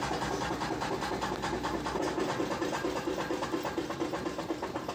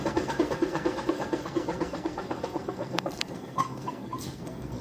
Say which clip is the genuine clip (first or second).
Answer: first